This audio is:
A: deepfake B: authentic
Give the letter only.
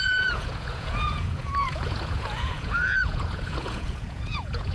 A